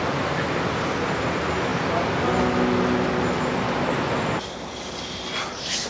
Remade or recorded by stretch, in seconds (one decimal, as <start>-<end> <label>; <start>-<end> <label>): 0.0-5.9 recorded